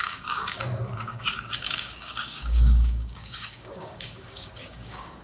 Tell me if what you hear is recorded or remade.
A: remade